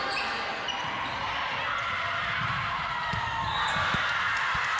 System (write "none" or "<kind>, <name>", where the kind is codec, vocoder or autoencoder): none